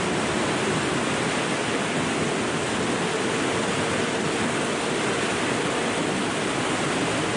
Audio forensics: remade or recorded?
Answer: recorded